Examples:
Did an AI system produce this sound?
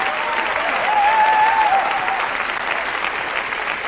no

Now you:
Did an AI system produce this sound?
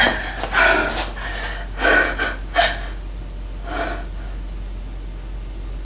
no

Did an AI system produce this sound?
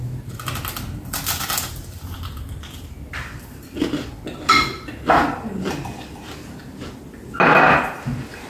no